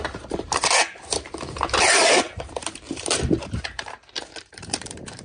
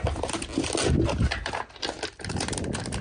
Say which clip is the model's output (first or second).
first